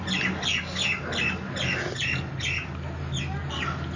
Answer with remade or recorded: recorded